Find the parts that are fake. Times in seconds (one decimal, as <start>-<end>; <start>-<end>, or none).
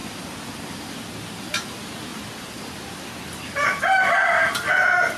none